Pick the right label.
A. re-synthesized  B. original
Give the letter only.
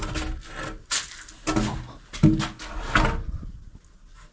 B